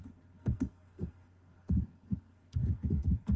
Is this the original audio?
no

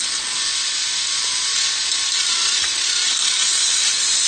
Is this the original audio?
yes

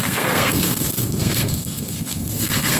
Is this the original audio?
no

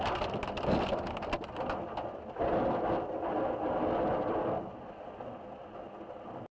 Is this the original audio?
yes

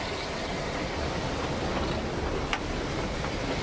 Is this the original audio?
yes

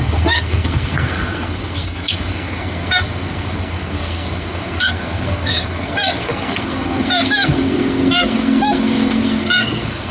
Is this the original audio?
no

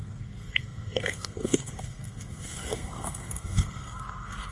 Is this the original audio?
no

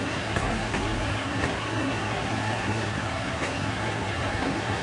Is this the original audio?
no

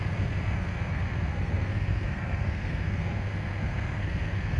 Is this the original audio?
no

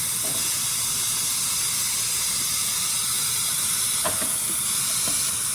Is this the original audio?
yes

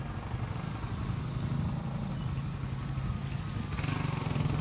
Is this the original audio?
yes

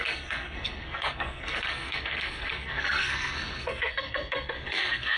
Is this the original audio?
no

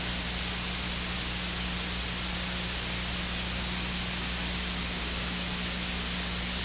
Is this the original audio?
yes